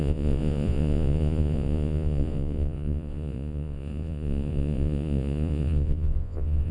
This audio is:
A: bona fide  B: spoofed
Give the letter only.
B